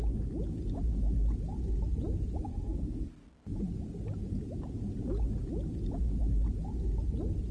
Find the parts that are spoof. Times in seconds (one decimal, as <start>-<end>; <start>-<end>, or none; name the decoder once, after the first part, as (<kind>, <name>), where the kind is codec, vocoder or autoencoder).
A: 2.5-3.0 (codec, SNAC)